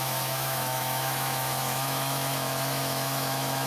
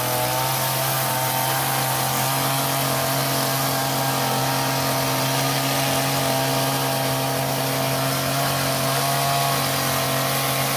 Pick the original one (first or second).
second